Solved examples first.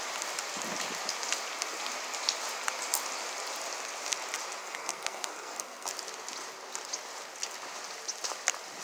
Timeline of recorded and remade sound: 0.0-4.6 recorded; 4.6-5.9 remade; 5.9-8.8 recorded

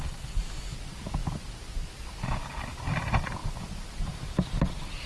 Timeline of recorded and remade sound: 0.0-5.1 recorded

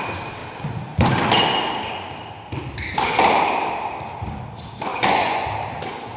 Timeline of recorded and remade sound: 0.0-4.9 recorded; 4.9-5.5 remade; 5.5-6.2 recorded

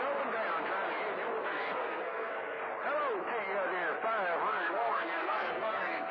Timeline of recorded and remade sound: 0.0-1.4 recorded; 1.4-2.6 remade; 2.6-4.5 recorded; 4.5-6.1 remade

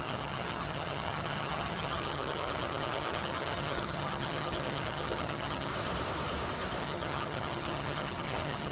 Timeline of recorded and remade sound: 0.0-5.7 remade; 5.7-6.8 recorded; 6.8-8.7 remade

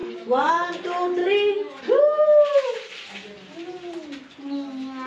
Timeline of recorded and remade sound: 0.0-0.5 remade; 0.5-1.2 recorded; 1.2-1.8 remade; 1.8-5.1 recorded